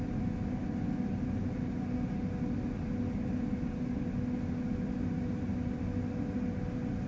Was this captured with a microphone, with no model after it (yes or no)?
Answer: yes